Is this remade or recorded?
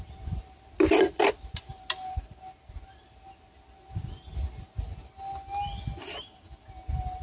recorded